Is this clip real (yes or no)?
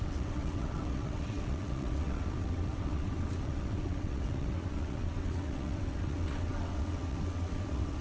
no